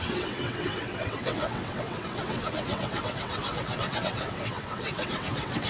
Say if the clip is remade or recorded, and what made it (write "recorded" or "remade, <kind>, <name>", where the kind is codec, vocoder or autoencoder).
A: remade, vocoder, WaveNeXt